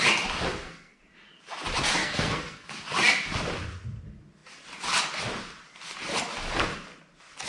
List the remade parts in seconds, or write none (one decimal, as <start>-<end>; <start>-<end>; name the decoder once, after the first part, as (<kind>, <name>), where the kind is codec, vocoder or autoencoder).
0.5-1.0 (codec, SNAC); 2.0-2.7